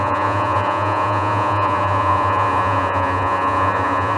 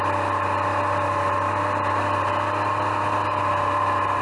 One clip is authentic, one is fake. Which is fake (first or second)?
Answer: first